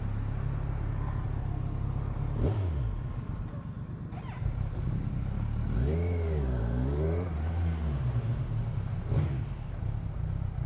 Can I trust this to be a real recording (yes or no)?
yes